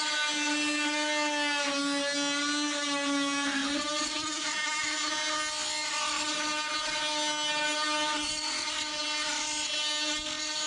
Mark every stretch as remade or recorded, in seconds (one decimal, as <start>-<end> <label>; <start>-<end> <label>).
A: 0.0-10.7 recorded